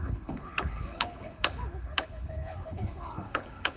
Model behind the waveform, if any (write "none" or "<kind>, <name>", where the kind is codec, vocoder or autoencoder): codec, HILCodec